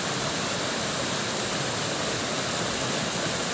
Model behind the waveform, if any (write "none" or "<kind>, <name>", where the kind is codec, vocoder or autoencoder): none